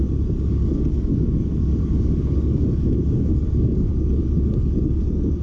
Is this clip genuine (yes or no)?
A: no